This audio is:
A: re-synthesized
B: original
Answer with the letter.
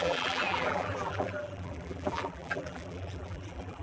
A